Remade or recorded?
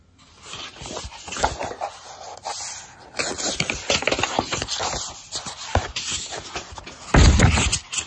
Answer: recorded